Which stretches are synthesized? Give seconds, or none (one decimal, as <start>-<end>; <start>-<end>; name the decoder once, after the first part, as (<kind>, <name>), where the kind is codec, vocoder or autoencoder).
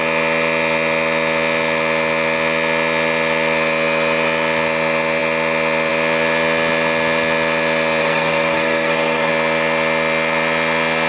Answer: 8.0-9.3 (codec, SNAC)